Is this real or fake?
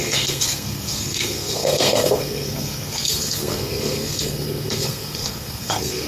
fake